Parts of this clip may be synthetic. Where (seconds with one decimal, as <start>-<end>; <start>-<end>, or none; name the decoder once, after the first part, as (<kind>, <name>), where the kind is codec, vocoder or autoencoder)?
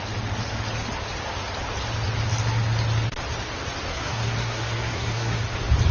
3.9-5.4 (codec, SNAC)